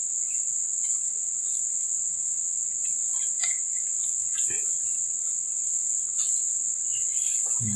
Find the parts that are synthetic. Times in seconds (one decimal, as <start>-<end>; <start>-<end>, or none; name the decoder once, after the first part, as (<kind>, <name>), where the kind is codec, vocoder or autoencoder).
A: 0.0-7.8 (vocoder, WaveNeXt)